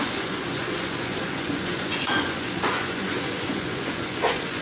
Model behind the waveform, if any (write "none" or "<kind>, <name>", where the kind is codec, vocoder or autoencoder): vocoder, Vocos